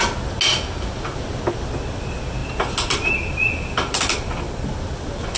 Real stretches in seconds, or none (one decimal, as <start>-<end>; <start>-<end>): 0.0-5.4